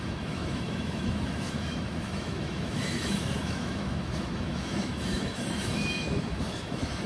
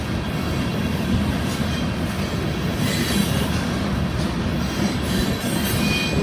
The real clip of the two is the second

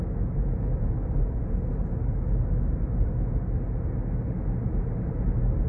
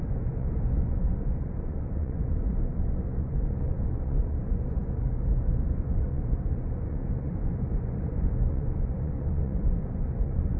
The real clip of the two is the first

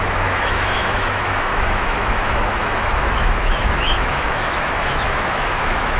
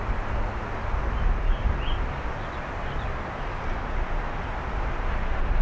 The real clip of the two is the second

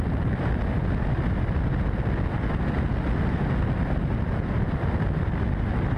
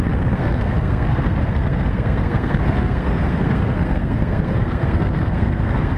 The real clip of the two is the first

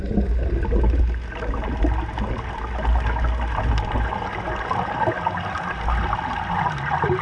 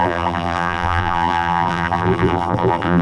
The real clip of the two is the first